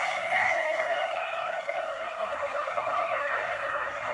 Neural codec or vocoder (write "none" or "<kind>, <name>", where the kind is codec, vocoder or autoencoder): codec, SNAC